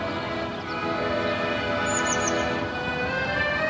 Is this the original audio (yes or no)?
yes